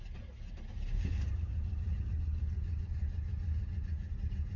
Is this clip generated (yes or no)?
no